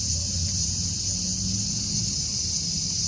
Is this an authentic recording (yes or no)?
yes